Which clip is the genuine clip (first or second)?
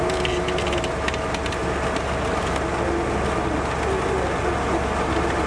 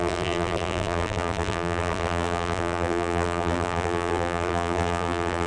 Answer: first